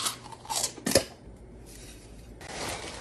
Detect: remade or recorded remade